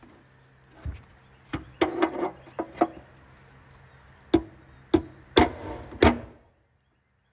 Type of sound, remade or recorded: recorded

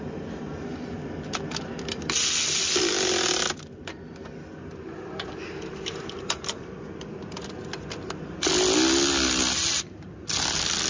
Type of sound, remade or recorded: recorded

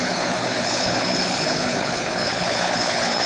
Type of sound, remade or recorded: remade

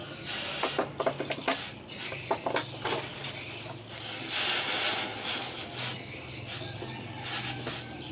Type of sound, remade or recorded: recorded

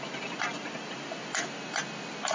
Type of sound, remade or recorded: recorded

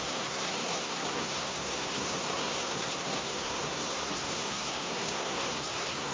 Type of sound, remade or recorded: remade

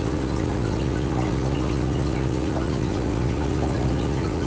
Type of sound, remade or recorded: remade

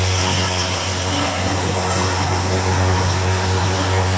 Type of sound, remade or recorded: remade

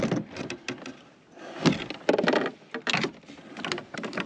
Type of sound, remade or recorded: recorded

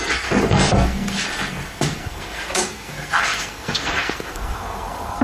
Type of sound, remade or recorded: remade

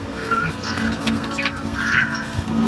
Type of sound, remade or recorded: remade